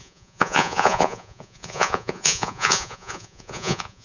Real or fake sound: fake